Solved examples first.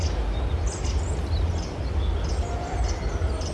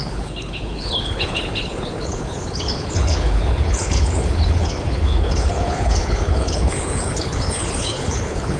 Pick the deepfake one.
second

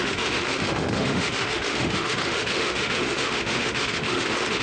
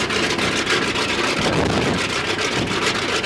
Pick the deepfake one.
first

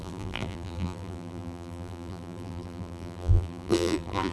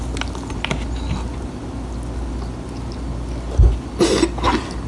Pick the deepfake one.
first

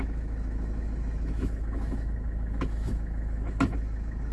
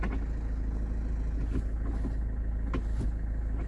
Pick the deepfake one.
first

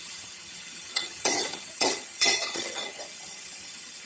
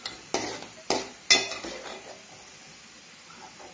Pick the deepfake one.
first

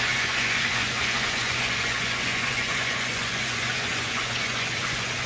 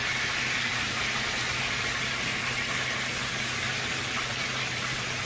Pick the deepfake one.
first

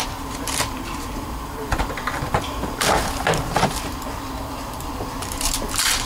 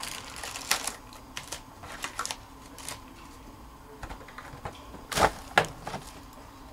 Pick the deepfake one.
first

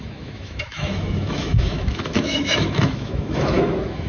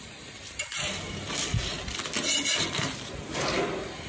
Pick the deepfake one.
first